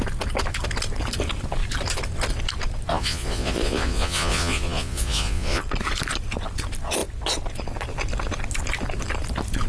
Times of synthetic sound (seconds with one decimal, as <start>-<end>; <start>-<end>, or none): 2.9-5.6